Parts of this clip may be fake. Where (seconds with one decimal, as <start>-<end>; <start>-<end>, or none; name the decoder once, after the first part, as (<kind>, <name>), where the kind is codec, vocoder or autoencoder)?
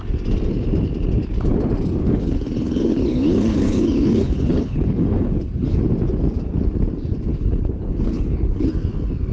2.0-5.8 (codec, HILCodec); 7.3-8.6